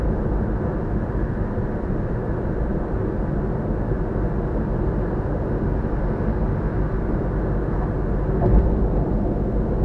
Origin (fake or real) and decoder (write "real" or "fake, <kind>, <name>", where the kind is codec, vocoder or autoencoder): real